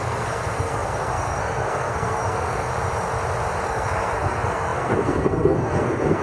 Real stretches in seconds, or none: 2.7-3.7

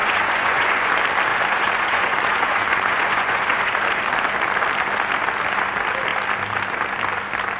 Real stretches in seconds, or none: 0.9-1.3; 4.0-7.6

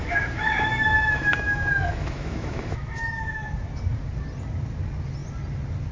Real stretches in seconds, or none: 3.5-5.9